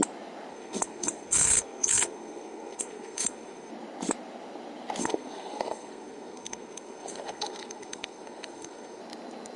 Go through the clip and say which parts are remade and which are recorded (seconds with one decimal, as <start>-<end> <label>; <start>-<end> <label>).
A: 0.0-0.5 recorded; 0.5-3.7 remade; 3.7-5.0 recorded; 5.0-9.0 remade; 9.0-9.6 recorded